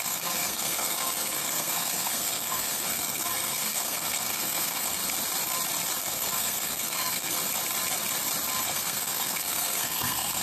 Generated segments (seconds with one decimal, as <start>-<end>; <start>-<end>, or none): 0.0-5.0; 6.0-7.4; 8.6-10.4